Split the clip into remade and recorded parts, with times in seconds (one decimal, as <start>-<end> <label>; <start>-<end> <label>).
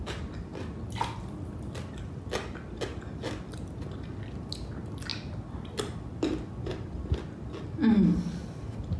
0.0-9.0 recorded